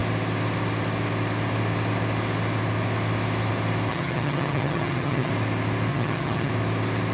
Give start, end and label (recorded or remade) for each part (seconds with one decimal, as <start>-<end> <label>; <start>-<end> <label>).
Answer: 0.0-3.9 recorded; 3.9-5.3 remade; 5.3-5.9 recorded; 5.9-6.5 remade; 6.5-7.1 recorded